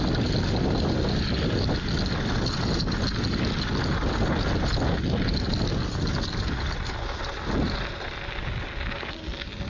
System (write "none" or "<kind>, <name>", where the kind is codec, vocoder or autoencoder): none